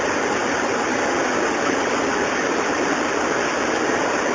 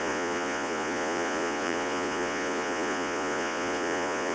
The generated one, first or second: second